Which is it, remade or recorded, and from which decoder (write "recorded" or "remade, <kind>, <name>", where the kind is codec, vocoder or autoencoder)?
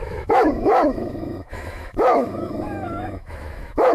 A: remade, autoencoder, DAC-VAE